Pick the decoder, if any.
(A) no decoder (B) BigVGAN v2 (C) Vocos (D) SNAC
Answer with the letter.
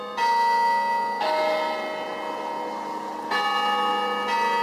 A